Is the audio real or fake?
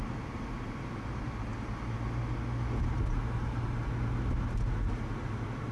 real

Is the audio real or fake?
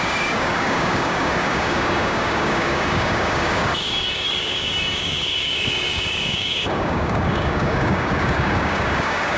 fake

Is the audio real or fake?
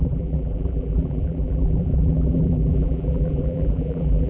fake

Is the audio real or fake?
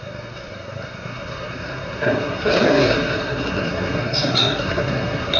fake